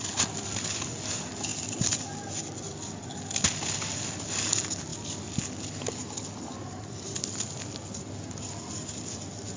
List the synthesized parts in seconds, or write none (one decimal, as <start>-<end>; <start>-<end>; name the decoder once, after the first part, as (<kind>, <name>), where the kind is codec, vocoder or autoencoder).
none